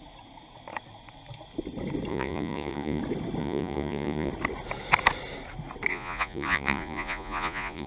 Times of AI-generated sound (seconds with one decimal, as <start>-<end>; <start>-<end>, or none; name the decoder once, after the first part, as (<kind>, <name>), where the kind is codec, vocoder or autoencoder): 2.1-3.0 (vocoder, Vocos); 3.4-4.3; 5.9-7.9